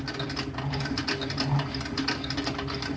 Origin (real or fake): real